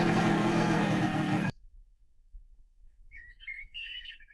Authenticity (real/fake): fake